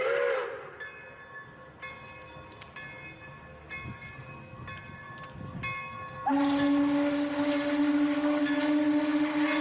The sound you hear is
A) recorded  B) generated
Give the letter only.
A